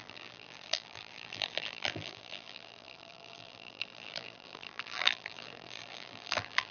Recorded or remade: remade